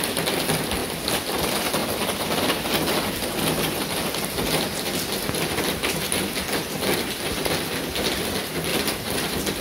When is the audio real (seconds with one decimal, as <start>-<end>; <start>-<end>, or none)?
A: 0.0-0.8; 1.4-8.7